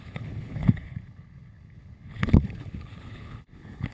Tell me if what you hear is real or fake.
fake